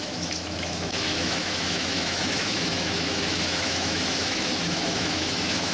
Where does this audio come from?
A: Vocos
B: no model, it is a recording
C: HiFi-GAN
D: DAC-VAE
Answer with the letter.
D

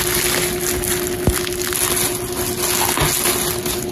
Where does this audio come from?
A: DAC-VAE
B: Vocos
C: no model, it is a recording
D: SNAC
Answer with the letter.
C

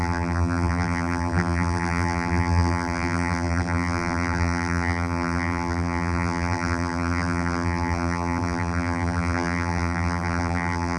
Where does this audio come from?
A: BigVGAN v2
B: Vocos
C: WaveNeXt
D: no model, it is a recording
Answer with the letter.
A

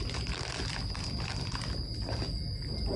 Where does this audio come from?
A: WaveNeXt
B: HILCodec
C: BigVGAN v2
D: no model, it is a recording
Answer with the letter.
D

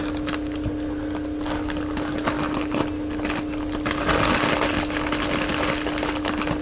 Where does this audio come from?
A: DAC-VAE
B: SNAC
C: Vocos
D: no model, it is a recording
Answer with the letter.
D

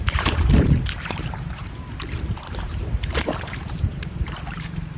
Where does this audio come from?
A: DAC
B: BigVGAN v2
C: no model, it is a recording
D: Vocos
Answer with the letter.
B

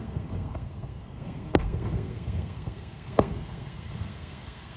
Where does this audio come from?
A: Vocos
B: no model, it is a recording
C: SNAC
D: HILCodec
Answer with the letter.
C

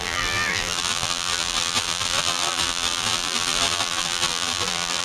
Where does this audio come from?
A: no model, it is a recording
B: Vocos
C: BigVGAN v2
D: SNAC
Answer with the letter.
C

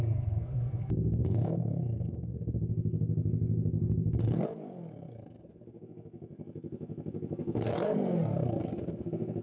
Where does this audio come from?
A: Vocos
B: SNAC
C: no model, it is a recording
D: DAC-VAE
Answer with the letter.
B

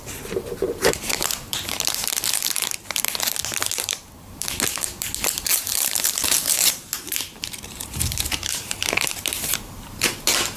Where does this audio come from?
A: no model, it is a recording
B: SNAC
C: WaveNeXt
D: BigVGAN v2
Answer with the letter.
D